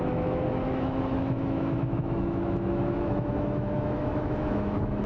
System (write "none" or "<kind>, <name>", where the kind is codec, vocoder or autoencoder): autoencoder, DAC-VAE